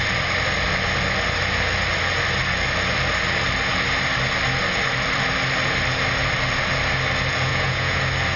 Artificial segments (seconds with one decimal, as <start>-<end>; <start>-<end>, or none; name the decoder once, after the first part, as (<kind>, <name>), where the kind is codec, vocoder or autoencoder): 7.5-8.0 (vocoder, Vocos)